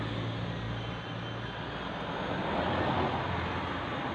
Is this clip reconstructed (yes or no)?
no